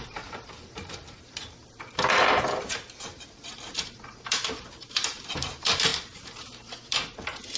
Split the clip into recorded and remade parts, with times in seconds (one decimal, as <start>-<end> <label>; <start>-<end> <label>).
0.0-7.6 remade